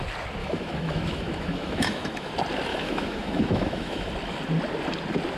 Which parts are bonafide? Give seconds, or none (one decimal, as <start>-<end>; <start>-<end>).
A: 0.0-0.4; 2.3-2.7; 4.1-5.4